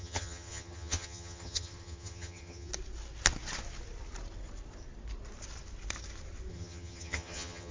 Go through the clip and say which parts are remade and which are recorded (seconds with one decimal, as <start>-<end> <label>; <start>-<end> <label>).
0.0-2.7 remade; 2.7-6.5 recorded; 6.5-7.7 remade